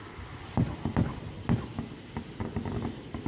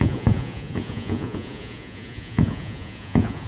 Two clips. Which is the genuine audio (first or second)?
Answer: first